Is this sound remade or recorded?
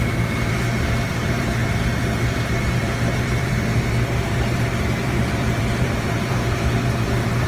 remade